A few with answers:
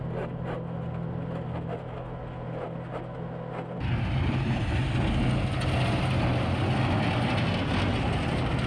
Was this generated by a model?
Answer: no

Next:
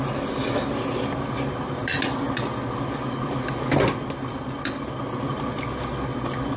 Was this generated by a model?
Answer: no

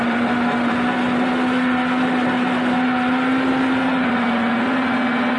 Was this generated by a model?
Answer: no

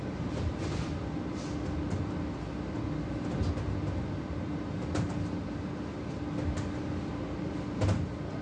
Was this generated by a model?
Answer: no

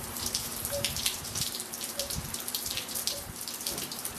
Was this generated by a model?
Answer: yes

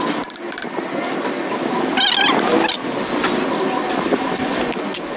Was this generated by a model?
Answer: no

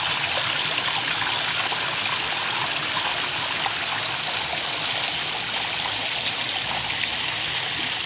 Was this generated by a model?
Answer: no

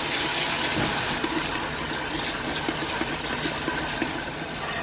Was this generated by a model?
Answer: no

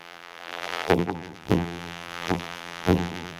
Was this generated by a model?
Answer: yes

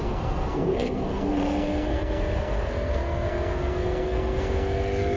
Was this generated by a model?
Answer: yes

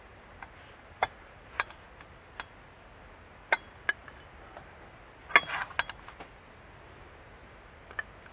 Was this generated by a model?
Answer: no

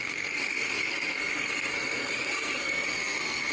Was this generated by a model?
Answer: yes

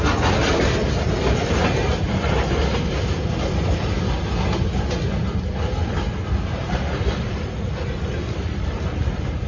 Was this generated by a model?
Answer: no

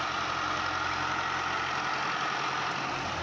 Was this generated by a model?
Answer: no